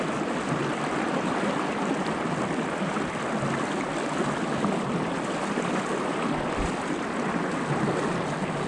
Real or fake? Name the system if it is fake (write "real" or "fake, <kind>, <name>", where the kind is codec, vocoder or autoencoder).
real